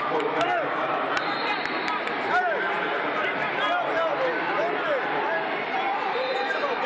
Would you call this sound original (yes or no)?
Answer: no